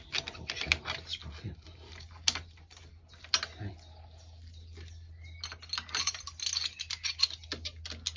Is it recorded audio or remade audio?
recorded